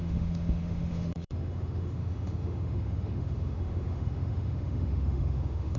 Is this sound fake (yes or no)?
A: yes